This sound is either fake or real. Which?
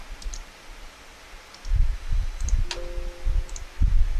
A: real